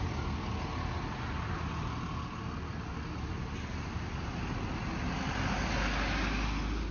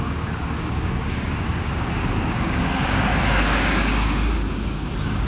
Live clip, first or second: first